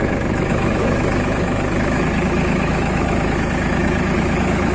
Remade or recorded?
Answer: remade